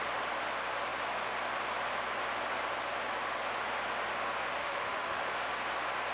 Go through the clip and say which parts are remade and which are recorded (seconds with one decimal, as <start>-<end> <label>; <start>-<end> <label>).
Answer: 0.0-4.6 recorded; 4.6-5.3 remade; 5.3-6.1 recorded